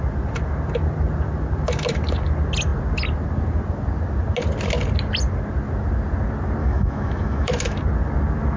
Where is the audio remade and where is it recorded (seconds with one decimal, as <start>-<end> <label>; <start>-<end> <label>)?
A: 0.0-6.6 recorded; 6.6-7.8 remade; 7.8-8.6 recorded